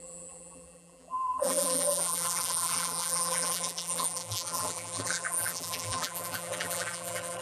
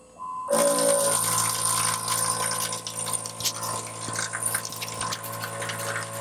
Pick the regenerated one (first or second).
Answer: first